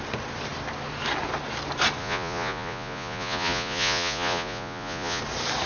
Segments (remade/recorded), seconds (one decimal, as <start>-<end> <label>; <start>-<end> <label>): 0.0-2.0 recorded; 2.0-5.2 remade; 5.2-5.7 recorded